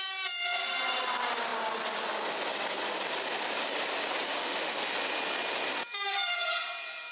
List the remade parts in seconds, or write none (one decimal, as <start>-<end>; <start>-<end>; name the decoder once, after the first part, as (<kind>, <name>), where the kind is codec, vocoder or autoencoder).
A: 4.4-4.9 (autoencoder, DAC-VAE)